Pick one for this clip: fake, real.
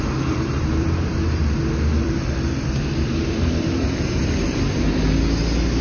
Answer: fake